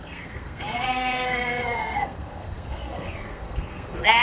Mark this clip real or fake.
fake